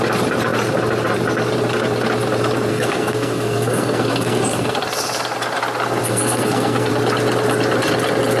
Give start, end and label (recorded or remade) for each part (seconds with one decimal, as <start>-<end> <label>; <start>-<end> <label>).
0.0-2.7 recorded; 2.7-4.8 remade; 4.8-6.0 recorded; 6.0-6.9 remade; 6.9-8.4 recorded